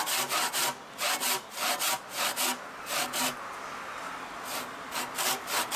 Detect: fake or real real